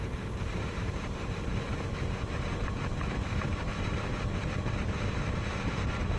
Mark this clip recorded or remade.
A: remade